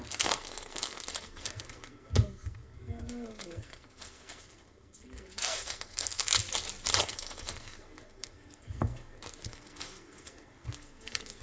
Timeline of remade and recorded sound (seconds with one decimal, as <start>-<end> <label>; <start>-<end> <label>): 0.0-6.4 remade; 6.4-7.0 recorded; 7.0-11.4 remade